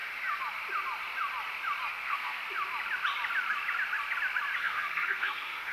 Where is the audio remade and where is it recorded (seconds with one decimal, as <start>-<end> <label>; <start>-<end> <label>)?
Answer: 0.0-1.9 recorded; 1.9-2.4 remade; 2.4-4.6 recorded; 4.6-5.7 remade